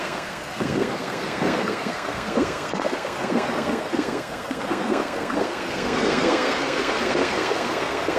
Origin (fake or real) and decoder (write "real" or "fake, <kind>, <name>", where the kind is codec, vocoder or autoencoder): fake, codec, SNAC